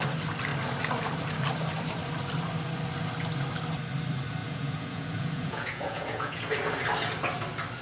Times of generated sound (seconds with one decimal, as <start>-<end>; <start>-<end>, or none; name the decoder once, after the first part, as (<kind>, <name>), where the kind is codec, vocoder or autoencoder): 4.4-6.5 (vocoder, Vocos)